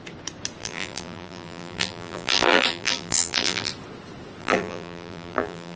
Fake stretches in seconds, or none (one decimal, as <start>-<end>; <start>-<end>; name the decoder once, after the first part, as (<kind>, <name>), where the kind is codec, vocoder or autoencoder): 0.6-3.7 (vocoder, BigVGAN v2); 4.4-5.8